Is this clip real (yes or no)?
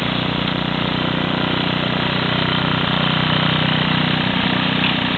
yes